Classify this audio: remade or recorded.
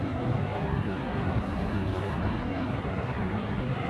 remade